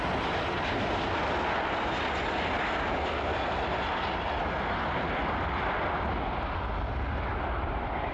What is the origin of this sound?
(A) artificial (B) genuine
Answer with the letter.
B